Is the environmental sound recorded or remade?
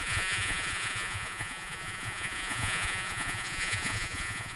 remade